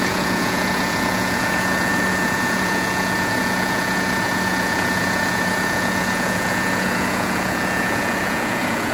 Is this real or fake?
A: fake